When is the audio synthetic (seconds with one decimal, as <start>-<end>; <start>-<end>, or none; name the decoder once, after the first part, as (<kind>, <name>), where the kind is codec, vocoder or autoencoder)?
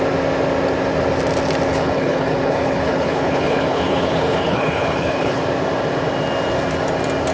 1.7-5.4 (codec, HILCodec)